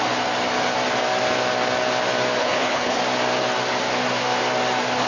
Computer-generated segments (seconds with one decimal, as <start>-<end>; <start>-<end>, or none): 2.4-3.0